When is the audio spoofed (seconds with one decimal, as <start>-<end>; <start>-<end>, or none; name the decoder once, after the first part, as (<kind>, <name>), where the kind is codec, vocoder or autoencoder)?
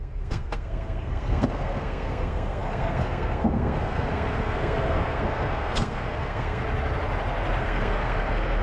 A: 0.0-6.6 (codec, SNAC); 7.6-8.6